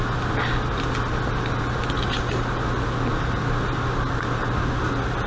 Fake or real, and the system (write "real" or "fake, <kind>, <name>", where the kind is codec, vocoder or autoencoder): real